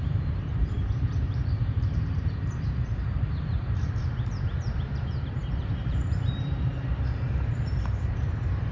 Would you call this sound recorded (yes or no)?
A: no